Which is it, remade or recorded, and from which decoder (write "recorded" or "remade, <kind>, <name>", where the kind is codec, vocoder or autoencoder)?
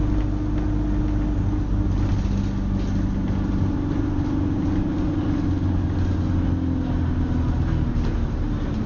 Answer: recorded